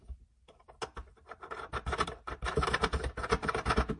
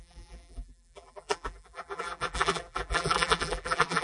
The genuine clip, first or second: first